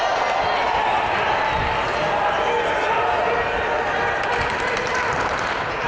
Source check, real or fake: real